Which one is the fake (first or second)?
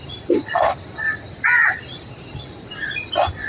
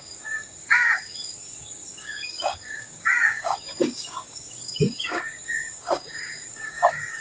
second